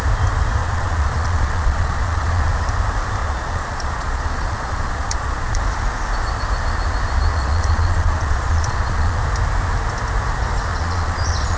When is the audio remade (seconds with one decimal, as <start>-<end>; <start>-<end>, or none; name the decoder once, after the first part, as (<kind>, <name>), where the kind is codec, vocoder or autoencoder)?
0.6-2.5 (vocoder, Vocos); 3.2-5.6; 7.3-9.2; 10.7-11.6